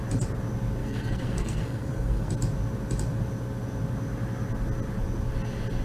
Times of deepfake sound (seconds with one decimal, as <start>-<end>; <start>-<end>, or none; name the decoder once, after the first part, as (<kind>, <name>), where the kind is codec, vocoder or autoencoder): 0.8-2.3 (codec, SNAC)